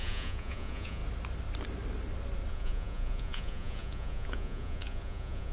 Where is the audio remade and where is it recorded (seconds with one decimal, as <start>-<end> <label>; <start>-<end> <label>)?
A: 0.0-1.0 remade; 1.0-2.5 recorded; 2.5-5.5 remade